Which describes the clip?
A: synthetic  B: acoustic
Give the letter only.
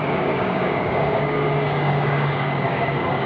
A